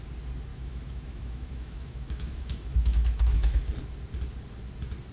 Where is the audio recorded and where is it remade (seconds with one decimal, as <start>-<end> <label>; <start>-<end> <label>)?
0.0-0.5 recorded; 0.5-3.6 remade; 3.6-5.1 recorded